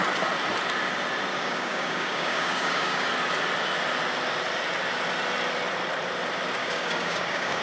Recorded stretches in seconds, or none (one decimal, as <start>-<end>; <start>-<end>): 0.0-1.3; 3.1-6.6